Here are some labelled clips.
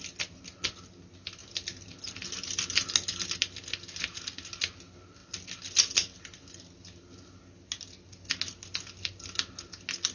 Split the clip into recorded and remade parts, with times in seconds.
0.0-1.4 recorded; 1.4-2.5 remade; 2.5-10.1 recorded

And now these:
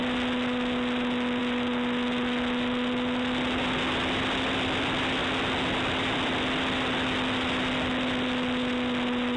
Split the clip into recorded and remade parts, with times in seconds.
0.0-9.4 recorded

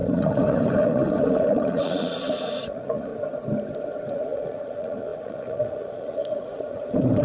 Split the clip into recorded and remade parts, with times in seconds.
0.0-3.1 remade; 3.1-4.1 recorded; 4.1-7.2 remade

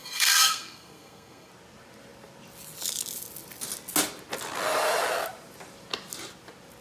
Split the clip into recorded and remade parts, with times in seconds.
0.0-1.5 remade; 1.5-6.8 recorded

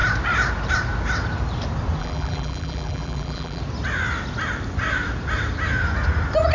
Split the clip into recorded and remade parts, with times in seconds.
0.0-2.0 recorded; 2.0-3.6 remade; 3.6-6.5 recorded